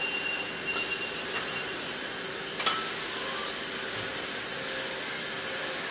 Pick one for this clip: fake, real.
real